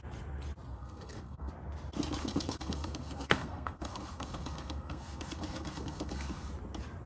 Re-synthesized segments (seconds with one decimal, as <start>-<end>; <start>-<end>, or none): 0.7-1.5; 2.2-6.5